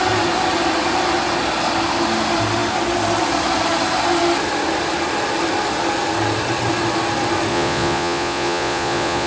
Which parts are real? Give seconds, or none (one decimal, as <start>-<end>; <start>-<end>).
0.0-7.5